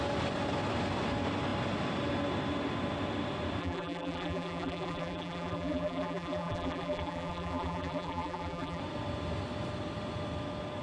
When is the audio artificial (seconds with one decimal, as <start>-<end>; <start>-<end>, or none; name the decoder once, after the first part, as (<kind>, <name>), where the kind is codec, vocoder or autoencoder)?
3.6-8.8 (vocoder, BigVGAN v2)